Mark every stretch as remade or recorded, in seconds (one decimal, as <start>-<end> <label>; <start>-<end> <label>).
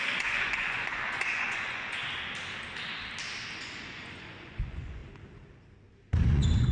0.0-2.0 remade; 2.0-3.6 recorded; 3.6-5.0 remade; 5.0-6.3 recorded; 6.3-6.7 remade